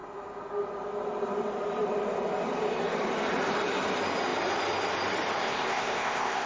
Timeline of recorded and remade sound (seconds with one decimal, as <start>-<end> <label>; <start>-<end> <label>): 0.0-5.4 recorded; 5.4-6.5 remade